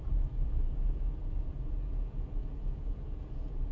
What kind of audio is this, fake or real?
fake